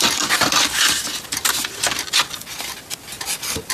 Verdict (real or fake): real